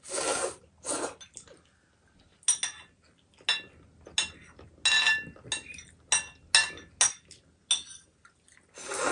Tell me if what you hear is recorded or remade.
recorded